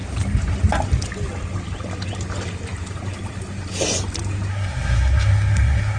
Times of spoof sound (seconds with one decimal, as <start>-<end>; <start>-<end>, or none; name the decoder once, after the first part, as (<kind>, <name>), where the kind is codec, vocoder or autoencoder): 4.5-6.0 (codec, SNAC)